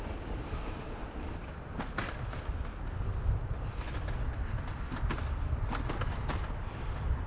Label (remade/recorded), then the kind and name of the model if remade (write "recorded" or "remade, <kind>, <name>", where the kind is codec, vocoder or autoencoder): remade, vocoder, BigVGAN v2